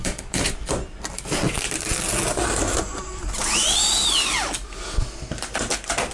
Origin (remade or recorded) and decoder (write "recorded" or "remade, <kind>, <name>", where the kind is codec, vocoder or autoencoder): recorded